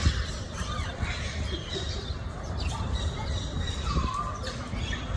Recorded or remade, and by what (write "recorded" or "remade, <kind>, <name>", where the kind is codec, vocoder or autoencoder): remade, vocoder, BigVGAN v2